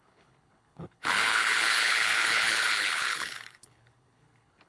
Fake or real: fake